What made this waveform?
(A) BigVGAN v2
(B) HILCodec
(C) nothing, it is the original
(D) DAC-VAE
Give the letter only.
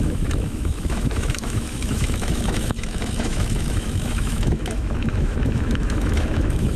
D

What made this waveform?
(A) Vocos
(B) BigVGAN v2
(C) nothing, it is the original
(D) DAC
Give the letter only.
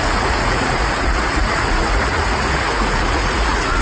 A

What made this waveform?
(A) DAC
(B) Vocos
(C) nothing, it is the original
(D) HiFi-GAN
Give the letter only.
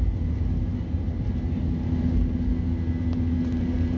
C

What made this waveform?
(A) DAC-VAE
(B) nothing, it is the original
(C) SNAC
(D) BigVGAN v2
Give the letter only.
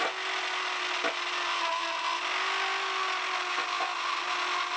B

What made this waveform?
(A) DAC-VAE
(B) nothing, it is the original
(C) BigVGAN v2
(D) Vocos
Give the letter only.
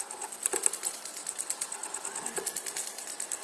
B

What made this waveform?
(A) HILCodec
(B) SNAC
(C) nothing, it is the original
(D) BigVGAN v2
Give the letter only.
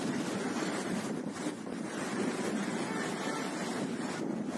C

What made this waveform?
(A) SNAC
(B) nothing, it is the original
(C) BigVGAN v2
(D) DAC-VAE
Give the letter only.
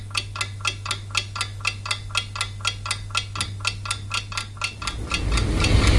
B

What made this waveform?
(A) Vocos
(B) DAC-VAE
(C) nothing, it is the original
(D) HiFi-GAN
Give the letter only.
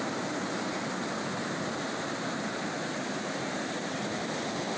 C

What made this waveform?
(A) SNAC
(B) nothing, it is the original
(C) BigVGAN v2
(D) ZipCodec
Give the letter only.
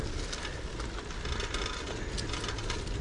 B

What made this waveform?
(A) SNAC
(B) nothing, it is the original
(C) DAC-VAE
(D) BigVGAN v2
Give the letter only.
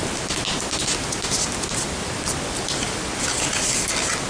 B